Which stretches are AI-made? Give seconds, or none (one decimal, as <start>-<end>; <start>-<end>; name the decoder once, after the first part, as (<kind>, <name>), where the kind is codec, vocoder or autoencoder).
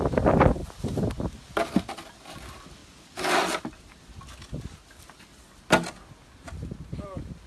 none